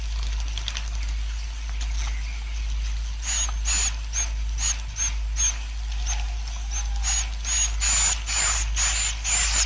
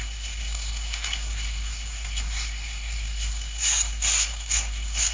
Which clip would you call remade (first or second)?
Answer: second